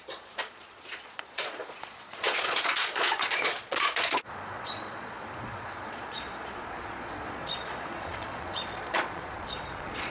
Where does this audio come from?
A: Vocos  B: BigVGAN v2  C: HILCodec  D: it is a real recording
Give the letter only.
A